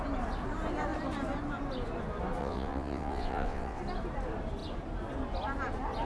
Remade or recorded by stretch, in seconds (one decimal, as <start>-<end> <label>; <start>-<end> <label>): 0.0-2.4 recorded; 2.4-3.8 remade; 3.8-6.0 recorded